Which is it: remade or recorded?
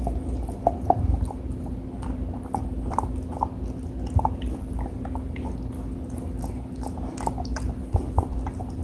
recorded